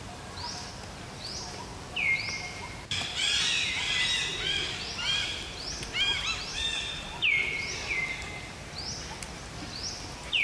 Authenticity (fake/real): real